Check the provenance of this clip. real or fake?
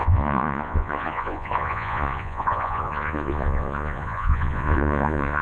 fake